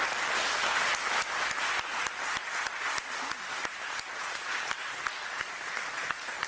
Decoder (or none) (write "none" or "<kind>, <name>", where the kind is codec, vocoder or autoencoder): none